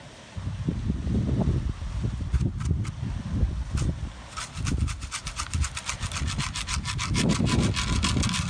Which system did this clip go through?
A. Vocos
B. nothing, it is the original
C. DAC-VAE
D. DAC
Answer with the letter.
B